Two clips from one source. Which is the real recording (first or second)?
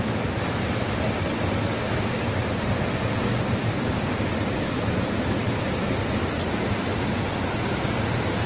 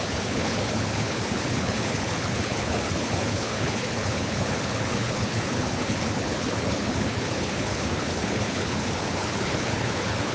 first